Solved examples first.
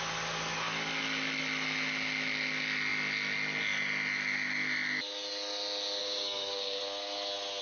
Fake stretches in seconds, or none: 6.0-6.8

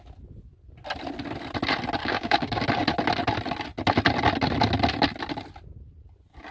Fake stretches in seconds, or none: 2.0-2.6

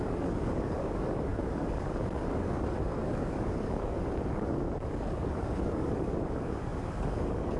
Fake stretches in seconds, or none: 0.0-7.6

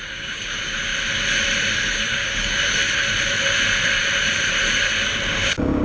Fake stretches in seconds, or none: 0.0-0.9; 1.9-2.8; 5.3-5.8

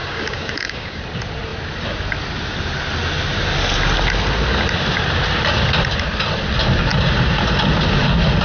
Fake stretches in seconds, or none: 0.0-1.0

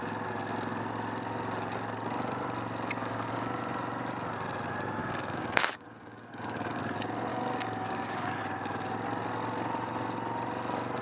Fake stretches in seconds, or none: 3.0-3.6; 5.0-6.8; 7.3-8.4

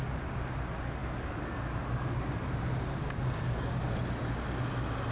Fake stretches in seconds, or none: 3.0-3.8

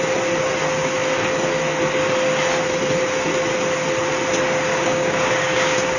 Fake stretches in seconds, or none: 4.7-6.0